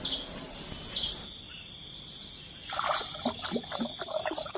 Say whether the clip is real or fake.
real